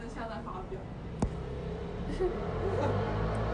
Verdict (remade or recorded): recorded